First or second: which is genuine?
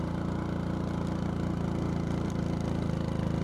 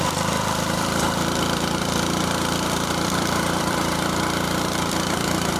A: first